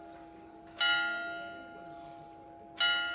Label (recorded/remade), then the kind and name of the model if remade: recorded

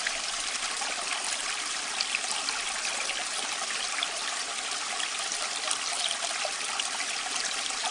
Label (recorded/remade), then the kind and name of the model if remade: recorded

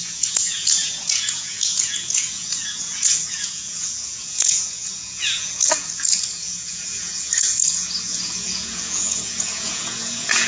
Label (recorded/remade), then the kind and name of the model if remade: remade, vocoder, Vocos